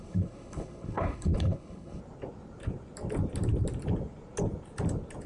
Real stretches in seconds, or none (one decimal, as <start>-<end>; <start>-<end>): 2.0-5.3